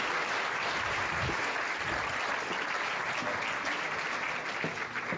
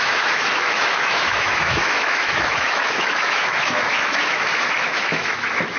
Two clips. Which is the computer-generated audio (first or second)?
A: second